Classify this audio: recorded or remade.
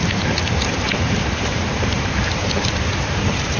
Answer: remade